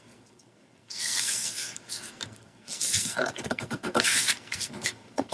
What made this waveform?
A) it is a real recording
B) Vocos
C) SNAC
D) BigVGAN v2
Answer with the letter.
C